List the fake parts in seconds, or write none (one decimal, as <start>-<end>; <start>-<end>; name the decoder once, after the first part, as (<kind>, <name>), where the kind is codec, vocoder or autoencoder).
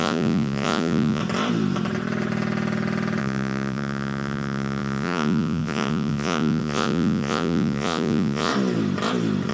0.0-1.2 (vocoder, Vocos); 3.2-8.5